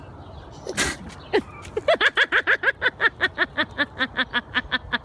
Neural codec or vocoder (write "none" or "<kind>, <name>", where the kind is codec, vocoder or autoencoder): none